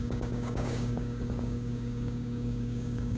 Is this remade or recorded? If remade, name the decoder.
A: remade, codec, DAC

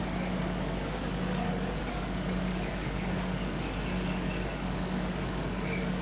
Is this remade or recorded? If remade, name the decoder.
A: remade, codec, DAC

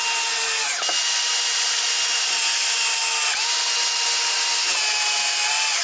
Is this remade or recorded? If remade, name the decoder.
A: recorded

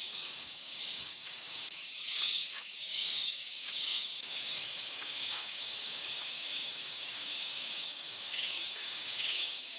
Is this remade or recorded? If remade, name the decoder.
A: remade, codec, DAC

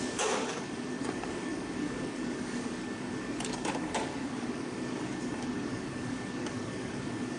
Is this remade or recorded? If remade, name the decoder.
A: remade, codec, DAC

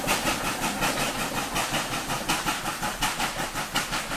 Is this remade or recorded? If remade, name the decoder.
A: recorded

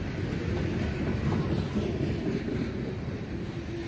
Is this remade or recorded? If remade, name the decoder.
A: recorded